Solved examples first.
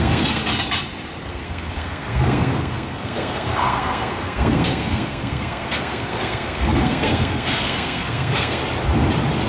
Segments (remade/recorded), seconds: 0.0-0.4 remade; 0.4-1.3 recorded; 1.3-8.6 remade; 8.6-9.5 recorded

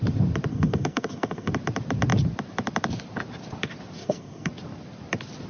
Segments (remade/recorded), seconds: 0.0-0.5 recorded; 0.5-1.5 remade; 1.5-4.0 recorded; 4.0-4.5 remade; 4.5-5.5 recorded

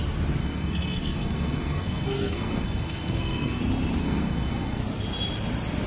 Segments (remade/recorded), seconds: 0.0-0.4 recorded; 0.4-3.6 remade; 3.6-4.0 recorded; 4.0-4.8 remade; 4.8-5.9 recorded

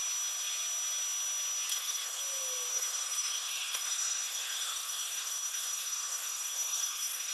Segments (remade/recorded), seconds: 0.0-1.7 recorded; 1.7-2.2 remade; 2.2-2.7 recorded; 2.7-7.3 remade

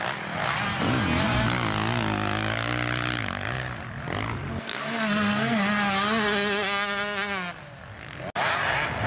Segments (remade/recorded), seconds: 0.0-4.6 recorded; 4.6-5.6 remade; 5.6-9.1 recorded

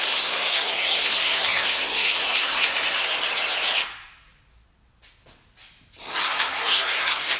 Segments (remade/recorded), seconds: 0.0-3.1 remade; 3.1-6.2 recorded; 6.2-7.4 remade

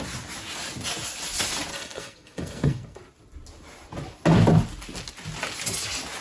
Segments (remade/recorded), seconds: 0.0-1.7 recorded; 1.7-3.0 remade; 3.0-6.2 recorded

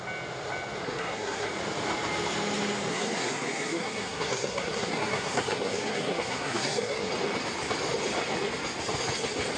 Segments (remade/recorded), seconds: 0.0-0.8 recorded; 0.8-1.5 remade; 1.5-2.9 recorded; 2.9-7.1 remade; 7.1-9.6 recorded